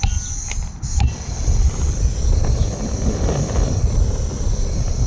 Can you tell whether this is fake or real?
real